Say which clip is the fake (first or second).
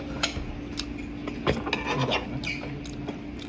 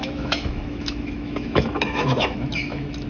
second